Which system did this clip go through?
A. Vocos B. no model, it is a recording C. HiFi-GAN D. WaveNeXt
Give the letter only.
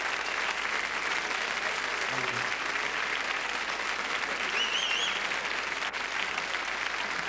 B